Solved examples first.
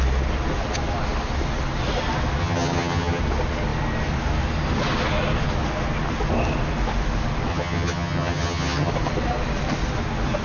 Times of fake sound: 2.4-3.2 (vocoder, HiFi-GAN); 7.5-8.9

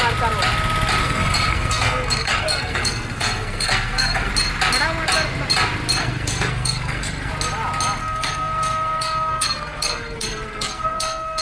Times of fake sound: 1.0-4.3 (codec, SNAC); 6.0-7.3; 8.0-11.4